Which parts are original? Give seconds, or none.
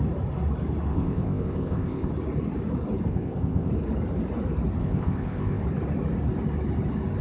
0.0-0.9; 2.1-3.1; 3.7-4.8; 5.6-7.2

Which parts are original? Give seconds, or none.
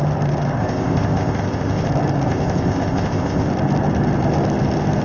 0.0-0.6; 1.9-2.3; 3.5-5.0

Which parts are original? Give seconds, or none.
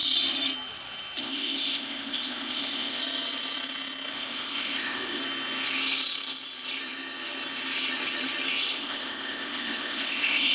0.0-1.2; 3.0-4.1; 5.2-8.7